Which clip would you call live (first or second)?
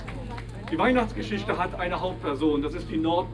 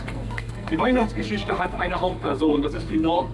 first